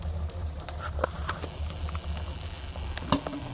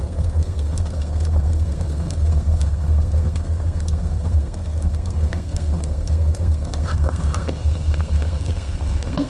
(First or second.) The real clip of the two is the first